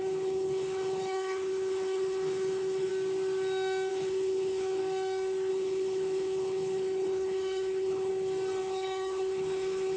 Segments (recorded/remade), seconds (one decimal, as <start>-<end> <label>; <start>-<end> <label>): 0.0-2.9 remade; 2.9-3.9 recorded; 3.9-4.8 remade; 4.8-5.5 recorded; 5.5-8.1 remade; 8.1-8.6 recorded; 8.6-10.0 remade